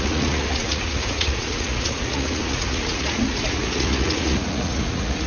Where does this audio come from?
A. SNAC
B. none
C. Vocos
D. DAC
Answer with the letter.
C